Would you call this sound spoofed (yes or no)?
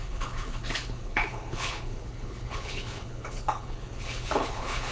yes